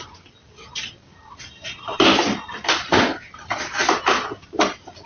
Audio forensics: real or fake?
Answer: real